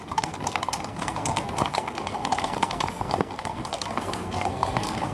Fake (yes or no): yes